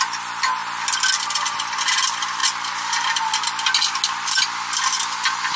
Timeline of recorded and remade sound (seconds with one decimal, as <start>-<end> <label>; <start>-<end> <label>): 0.0-0.6 remade; 0.6-1.1 recorded; 1.1-2.4 remade; 2.4-5.6 recorded